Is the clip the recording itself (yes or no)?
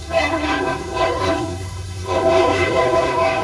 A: no